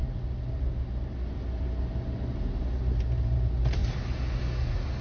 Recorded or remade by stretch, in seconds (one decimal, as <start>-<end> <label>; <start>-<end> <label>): 0.0-5.0 recorded